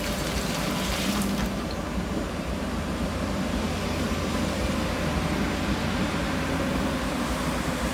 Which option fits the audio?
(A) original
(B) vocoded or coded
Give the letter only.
B